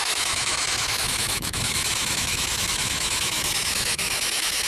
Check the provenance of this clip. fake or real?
fake